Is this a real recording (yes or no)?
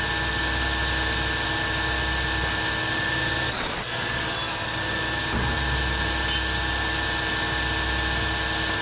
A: yes